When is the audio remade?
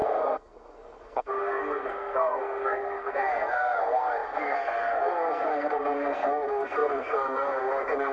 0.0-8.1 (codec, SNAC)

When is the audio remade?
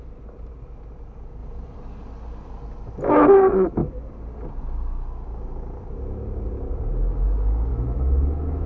7.7-8.7 (autoencoder, DAC-VAE)